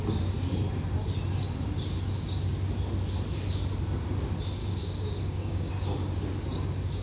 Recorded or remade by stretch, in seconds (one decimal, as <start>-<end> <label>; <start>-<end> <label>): 0.0-4.6 recorded; 4.6-5.7 remade; 5.7-7.0 recorded